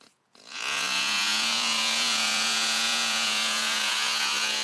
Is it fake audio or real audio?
fake